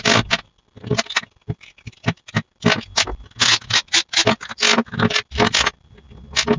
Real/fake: real